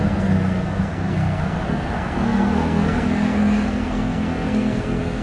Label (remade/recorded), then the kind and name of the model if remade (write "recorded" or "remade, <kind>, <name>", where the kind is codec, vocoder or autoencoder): remade, codec, SNAC